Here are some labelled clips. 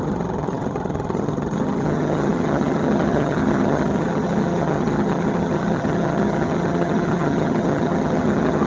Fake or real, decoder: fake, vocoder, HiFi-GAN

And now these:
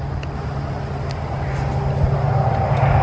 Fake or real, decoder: real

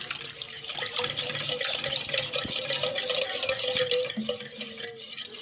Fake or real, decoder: real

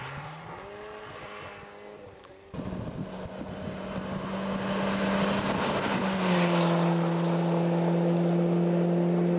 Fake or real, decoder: real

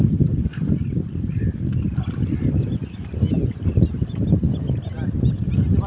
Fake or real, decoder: real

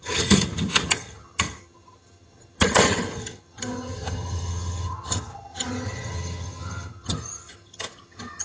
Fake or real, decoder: fake, vocoder, HiFi-GAN